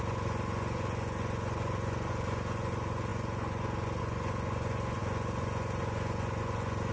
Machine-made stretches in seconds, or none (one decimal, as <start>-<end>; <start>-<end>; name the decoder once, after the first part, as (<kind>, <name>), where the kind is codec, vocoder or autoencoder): 0.0-6.9 (vocoder, Vocos)